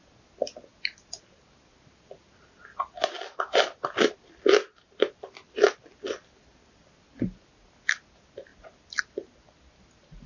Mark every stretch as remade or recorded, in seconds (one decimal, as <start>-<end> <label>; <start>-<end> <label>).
0.0-10.3 recorded